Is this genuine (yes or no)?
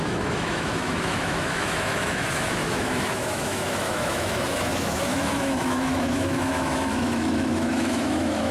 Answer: no